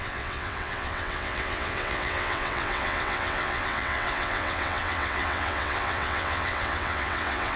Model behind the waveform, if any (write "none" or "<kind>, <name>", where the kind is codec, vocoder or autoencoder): vocoder, WaveNeXt